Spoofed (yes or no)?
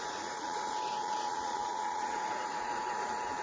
yes